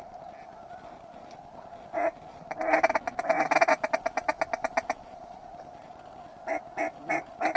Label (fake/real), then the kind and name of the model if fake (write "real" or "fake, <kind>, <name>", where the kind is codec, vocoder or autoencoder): real